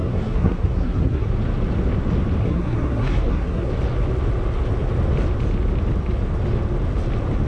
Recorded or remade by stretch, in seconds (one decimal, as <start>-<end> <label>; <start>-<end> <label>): 0.0-1.3 remade; 1.3-2.4 recorded; 2.4-3.7 remade; 3.7-7.5 recorded